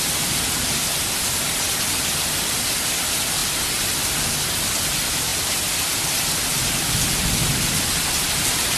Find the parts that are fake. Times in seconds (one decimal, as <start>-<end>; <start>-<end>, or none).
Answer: none